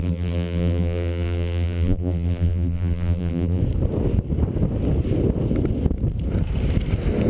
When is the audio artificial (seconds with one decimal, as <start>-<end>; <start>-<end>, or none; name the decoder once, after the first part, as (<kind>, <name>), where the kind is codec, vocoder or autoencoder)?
0.0-3.6 (vocoder, BigVGAN v2)